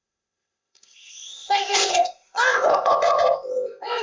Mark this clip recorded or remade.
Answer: remade